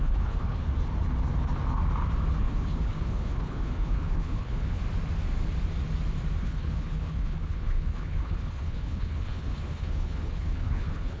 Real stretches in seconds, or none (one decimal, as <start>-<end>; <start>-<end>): 0.6-2.4; 4.8-6.4